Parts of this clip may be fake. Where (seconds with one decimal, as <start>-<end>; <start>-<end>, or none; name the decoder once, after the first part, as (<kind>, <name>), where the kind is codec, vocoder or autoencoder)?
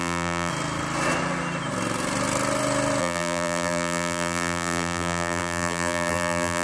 0.0-0.5 (vocoder, BigVGAN v2); 3.0-6.6